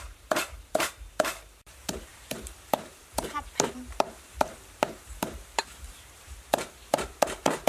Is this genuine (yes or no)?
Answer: no